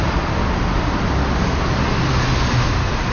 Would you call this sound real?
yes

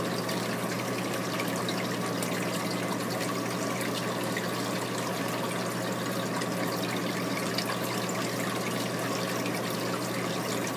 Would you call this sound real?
yes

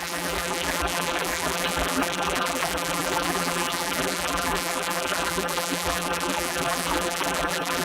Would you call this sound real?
no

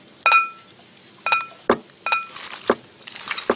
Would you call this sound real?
yes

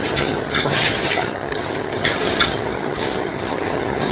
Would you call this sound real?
no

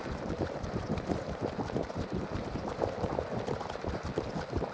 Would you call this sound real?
yes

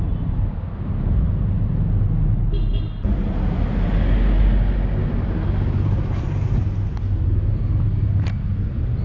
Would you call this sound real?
yes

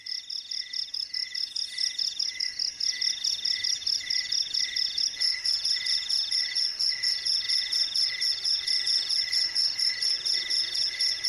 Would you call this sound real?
yes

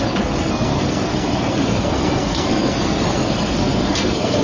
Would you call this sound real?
no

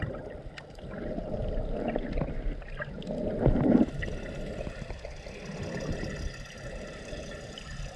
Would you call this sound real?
yes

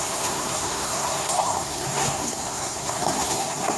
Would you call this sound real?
no